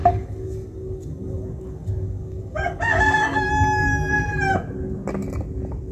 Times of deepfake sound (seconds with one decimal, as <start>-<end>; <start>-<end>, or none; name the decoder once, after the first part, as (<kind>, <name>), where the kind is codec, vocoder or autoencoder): 0.0-3.5 (codec, DAC)